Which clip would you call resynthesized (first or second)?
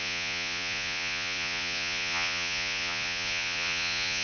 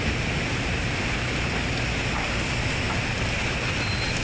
first